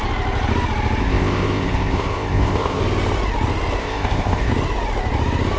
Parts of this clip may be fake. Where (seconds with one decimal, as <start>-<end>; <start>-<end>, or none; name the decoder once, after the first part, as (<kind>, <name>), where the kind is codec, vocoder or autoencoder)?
1.0-2.8 (codec, ZipCodec); 3.8-4.5